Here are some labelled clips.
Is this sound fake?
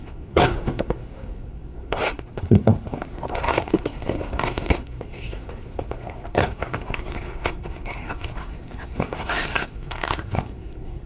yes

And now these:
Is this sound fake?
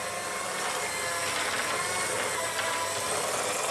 no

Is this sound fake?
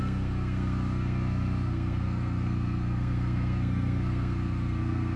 yes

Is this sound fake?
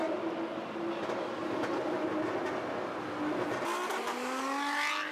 no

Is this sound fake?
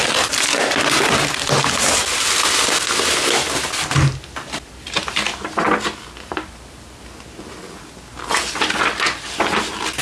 no